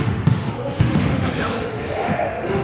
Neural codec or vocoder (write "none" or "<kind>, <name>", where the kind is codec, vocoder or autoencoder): autoencoder, DAC-VAE